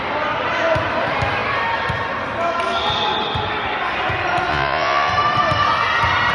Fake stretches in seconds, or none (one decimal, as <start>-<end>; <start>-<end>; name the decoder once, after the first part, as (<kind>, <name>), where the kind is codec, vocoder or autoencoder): 4.5-5.1 (vocoder, Vocos)